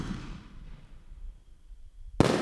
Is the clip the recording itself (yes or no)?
yes